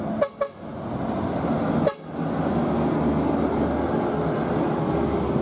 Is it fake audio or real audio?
real